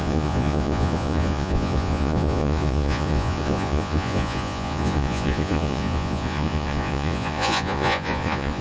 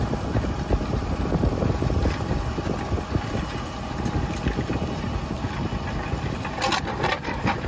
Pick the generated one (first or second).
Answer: first